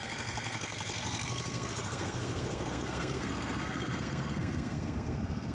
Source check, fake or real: fake